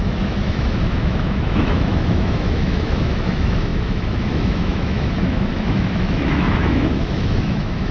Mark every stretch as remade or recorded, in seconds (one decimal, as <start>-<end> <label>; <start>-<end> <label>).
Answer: 0.0-7.9 remade